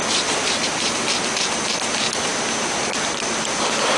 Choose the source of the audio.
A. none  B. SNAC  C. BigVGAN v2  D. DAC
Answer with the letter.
A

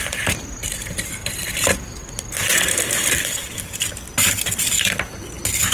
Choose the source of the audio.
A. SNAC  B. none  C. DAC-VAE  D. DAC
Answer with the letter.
B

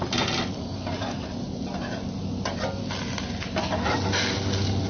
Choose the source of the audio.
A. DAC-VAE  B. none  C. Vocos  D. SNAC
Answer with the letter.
B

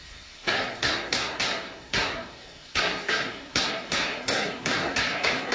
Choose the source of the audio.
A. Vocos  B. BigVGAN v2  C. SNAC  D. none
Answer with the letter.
C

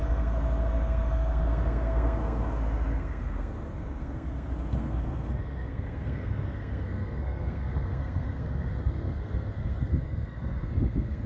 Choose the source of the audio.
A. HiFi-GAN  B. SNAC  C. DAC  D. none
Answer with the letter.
B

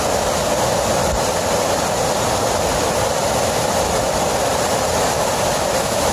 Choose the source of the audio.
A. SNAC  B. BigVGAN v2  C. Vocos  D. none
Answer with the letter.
D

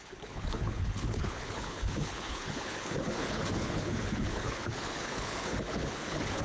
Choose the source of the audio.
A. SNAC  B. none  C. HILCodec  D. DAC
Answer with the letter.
C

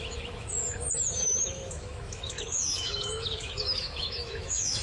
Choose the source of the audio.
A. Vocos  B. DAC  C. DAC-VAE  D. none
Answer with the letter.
C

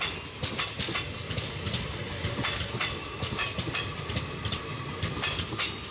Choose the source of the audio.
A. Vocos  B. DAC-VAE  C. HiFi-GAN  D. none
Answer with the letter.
D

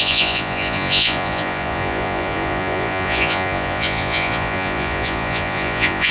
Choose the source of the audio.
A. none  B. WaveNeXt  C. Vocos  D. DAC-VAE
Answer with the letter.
C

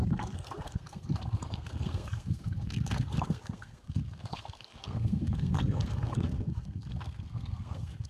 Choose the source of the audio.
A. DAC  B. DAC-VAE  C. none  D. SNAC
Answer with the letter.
D